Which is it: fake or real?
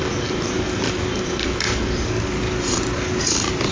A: real